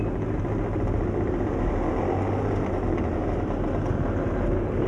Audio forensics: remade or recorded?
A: recorded